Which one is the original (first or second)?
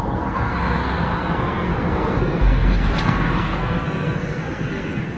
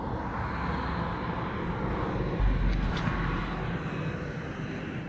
second